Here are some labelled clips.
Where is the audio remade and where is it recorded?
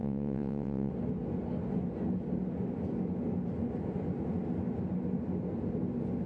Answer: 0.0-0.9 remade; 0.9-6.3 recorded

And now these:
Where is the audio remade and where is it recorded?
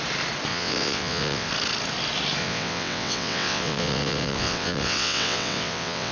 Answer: 0.0-0.5 recorded; 0.5-1.5 remade; 1.5-2.4 recorded; 2.4-6.1 remade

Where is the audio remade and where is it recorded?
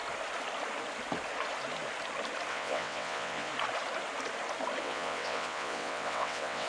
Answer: 0.0-2.5 recorded; 2.5-3.5 remade; 3.5-4.8 recorded; 4.8-6.7 remade